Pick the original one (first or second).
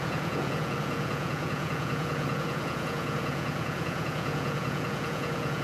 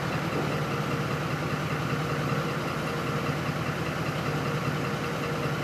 second